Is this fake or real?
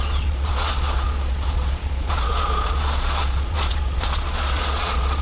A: fake